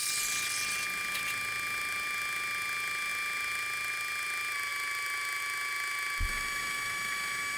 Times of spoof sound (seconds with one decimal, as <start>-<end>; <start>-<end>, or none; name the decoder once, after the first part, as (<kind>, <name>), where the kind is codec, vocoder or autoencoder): 6.3-7.6 (autoencoder, DAC-VAE)